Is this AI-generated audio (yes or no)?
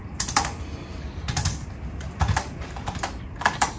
yes